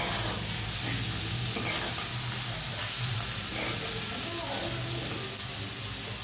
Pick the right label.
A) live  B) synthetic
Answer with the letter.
A